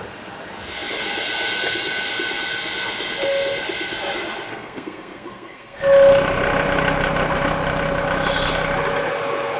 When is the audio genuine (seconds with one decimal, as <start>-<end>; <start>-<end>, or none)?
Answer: 0.0-4.5; 5.8-9.6